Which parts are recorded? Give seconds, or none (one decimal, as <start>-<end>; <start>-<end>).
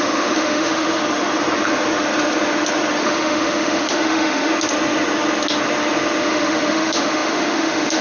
1.0-3.0; 4.5-6.2